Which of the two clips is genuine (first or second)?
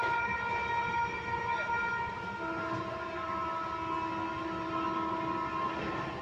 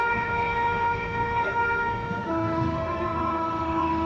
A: first